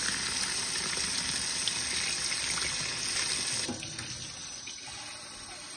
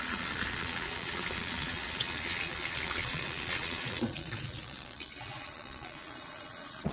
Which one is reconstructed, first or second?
second